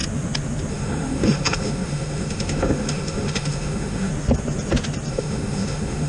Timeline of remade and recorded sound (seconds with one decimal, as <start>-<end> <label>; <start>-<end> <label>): 0.0-0.7 recorded; 0.7-4.1 remade; 4.1-5.1 recorded; 5.1-6.1 remade